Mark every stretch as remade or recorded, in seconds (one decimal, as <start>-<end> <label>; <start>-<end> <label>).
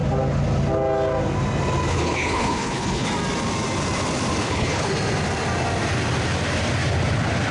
0.0-1.9 recorded; 1.9-3.1 remade; 3.1-4.4 recorded; 4.4-4.9 remade; 4.9-7.5 recorded